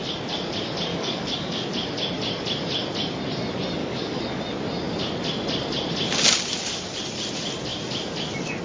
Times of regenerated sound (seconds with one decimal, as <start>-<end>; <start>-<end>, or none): 0.9-1.7; 3.8-4.4